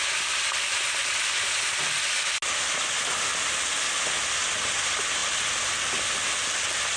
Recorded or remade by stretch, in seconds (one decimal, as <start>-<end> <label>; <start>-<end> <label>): 0.0-7.0 recorded